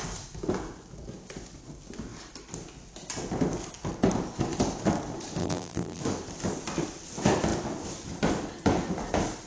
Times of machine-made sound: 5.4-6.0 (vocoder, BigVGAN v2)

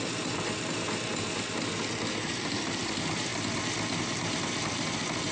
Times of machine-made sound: 0.0-1.1 (vocoder, BigVGAN v2); 2.3-3.3; 4.0-5.3

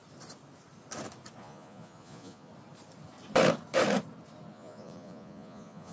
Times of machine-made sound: 1.4-2.5 (vocoder, Vocos); 4.5-5.9

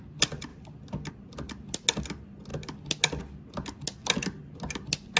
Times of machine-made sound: none

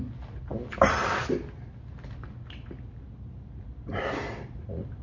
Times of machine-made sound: none

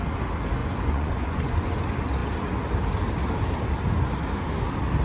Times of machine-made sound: 0.6-1.7 (vocoder, Vocos)

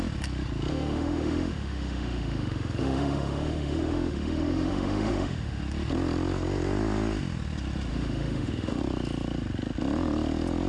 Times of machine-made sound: 0.7-5.6 (autoencoder, DAC-VAE); 7.9-8.8